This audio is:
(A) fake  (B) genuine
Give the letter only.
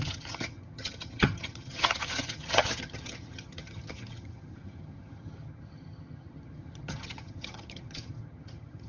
A